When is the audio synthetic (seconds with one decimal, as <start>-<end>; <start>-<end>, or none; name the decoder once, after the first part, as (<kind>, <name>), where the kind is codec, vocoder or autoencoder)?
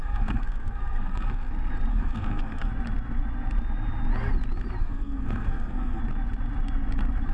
0.0-1.5 (codec, SNAC); 1.9-2.7; 4.8-6.0